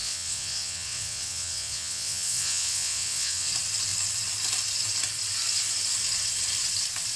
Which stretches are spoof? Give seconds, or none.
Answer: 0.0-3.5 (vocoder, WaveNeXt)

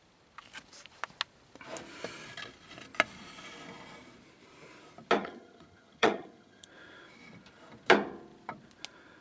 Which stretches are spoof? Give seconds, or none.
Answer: 5.2-6.7 (vocoder, HiFi-GAN)

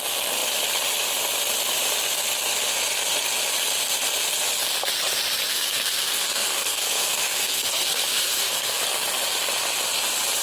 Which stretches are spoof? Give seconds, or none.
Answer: 5.5-8.8 (codec, SNAC)